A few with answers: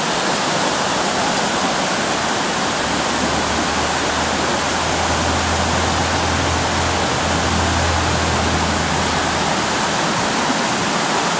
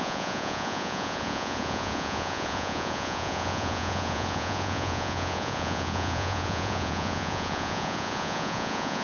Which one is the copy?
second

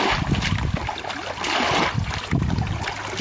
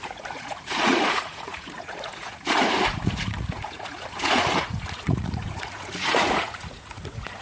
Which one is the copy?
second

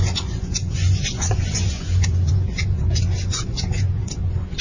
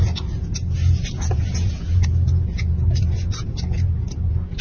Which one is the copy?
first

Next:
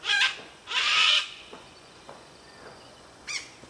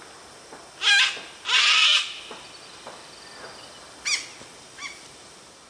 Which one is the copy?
first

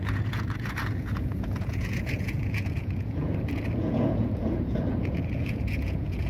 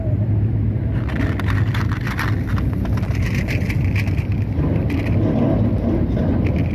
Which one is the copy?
first